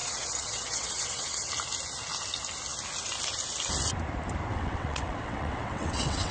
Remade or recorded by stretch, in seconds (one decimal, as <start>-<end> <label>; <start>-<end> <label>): 0.0-1.5 remade; 1.5-4.5 recorded; 4.5-6.3 remade